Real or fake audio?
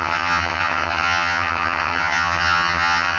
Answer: fake